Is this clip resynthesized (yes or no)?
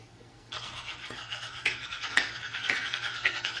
yes